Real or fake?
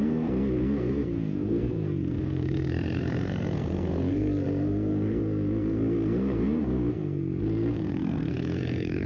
fake